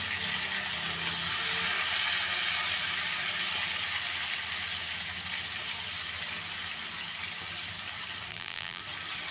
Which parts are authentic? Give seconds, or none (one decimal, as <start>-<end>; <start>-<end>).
0.0-8.3; 8.8-9.3